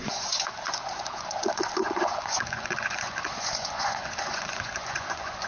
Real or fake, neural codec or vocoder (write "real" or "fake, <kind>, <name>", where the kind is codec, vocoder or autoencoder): fake, vocoder, Vocos